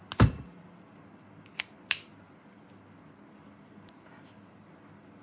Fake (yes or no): no